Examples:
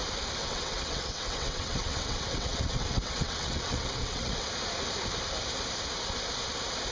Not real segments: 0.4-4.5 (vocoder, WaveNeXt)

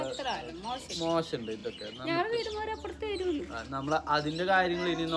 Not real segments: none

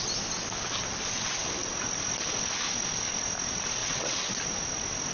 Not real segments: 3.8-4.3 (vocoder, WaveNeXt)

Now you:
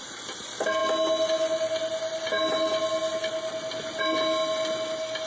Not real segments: none

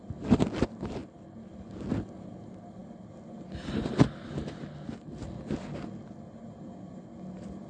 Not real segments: none

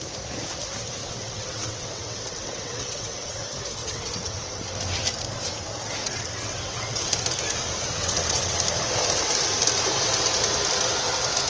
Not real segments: 1.0-3.4 (vocoder, WaveNeXt); 3.8-4.4; 6.0-7.1; 8.0-8.6

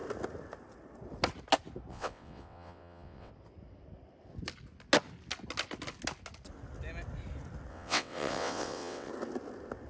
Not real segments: 1.9-3.3 (vocoder, WaveNeXt); 7.7-9.1

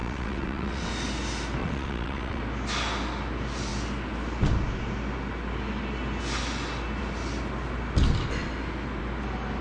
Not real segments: 0.0-0.9 (vocoder, WaveNeXt); 1.6-2.4